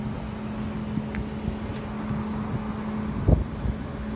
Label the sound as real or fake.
real